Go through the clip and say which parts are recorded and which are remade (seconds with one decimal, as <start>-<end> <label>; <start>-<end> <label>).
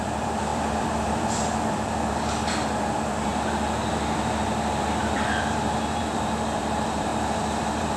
0.0-3.3 remade; 3.3-4.2 recorded; 4.2-7.1 remade; 7.1-7.6 recorded; 7.6-8.0 remade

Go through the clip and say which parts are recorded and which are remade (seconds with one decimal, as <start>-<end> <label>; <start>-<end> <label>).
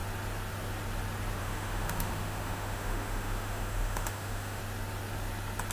0.0-1.4 recorded; 1.4-4.6 remade; 4.6-5.7 recorded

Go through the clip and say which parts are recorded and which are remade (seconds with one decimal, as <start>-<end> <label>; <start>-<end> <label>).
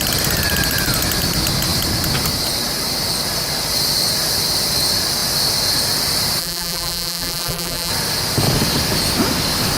0.0-6.4 recorded; 6.4-7.9 remade; 7.9-9.8 recorded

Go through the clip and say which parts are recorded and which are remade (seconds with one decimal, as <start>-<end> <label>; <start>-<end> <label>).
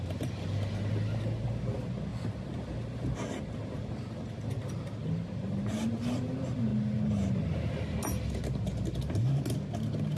0.0-10.2 recorded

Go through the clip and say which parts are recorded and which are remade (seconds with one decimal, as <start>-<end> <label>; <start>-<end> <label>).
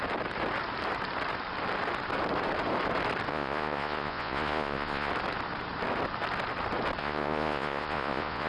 0.0-3.3 recorded; 3.3-5.1 remade; 5.1-7.0 recorded; 7.0-8.5 remade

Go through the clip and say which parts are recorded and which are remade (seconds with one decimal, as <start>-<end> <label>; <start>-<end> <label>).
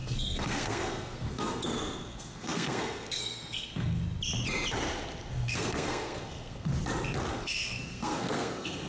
0.0-4.0 remade; 4.0-5.3 recorded; 5.3-6.7 remade; 6.7-7.3 recorded; 7.3-8.9 remade